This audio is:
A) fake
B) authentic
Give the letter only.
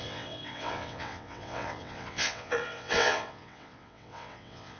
A